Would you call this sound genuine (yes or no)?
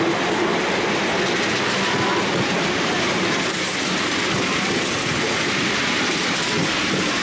yes